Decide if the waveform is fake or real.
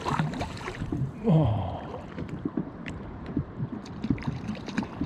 fake